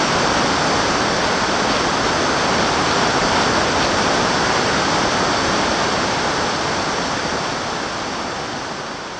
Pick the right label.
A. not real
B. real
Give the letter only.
B